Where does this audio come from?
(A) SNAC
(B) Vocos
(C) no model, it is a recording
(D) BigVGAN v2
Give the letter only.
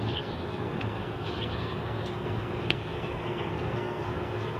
A